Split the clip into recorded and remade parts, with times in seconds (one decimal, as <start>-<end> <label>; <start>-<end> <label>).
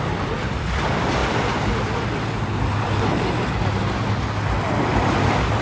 0.0-5.6 recorded